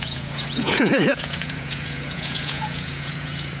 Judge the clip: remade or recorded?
remade